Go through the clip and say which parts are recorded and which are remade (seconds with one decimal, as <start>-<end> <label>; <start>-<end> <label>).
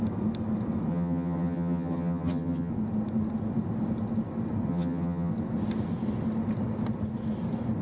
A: 0.0-0.9 recorded; 0.9-2.7 remade; 2.7-4.7 recorded; 4.7-5.3 remade; 5.3-7.8 recorded